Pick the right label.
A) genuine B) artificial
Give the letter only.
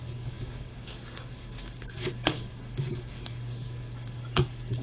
B